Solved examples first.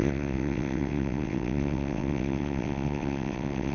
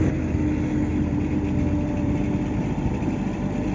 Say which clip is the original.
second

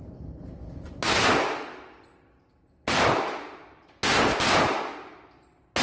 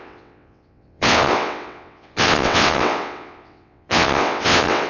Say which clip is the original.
first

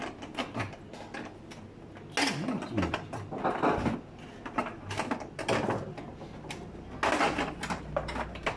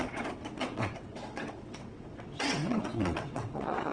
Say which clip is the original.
first